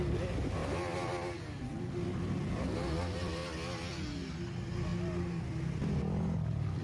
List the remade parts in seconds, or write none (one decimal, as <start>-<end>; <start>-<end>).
none